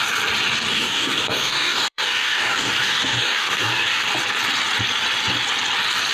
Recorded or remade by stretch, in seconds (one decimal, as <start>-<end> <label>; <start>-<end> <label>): 0.0-0.7 recorded; 0.7-4.0 remade; 4.0-6.1 recorded